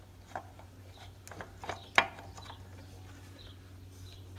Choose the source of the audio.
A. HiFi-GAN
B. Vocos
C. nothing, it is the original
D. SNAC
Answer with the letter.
C